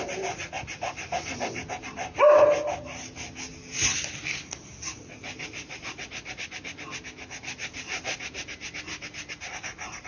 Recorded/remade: recorded